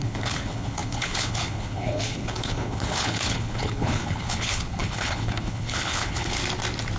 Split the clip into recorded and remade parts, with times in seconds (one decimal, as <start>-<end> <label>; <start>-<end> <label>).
0.0-6.4 remade; 6.4-7.0 recorded